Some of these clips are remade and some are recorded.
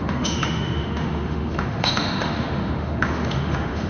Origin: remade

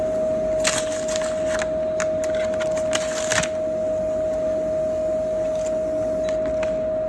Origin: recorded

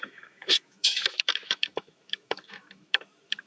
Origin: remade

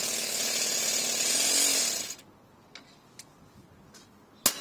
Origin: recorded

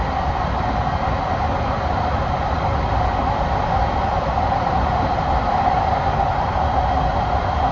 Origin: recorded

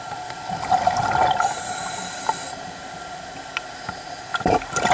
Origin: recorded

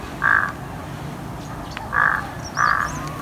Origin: recorded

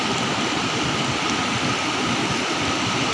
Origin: recorded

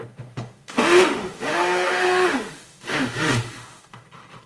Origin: remade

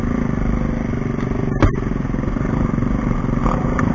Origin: recorded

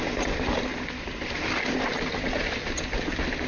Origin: recorded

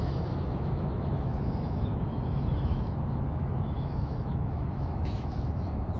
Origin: remade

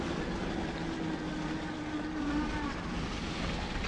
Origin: recorded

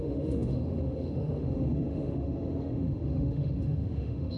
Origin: remade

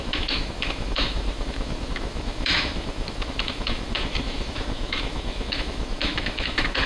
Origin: remade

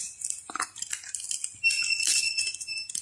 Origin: recorded